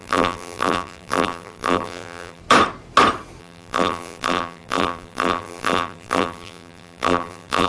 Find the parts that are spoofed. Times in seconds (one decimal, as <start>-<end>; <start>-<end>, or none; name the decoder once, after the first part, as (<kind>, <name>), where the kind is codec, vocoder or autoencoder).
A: 0.0-2.4 (vocoder, BigVGAN v2); 3.4-7.7